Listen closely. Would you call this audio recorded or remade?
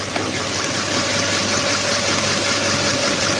recorded